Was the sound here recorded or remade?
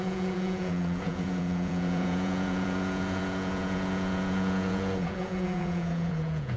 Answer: remade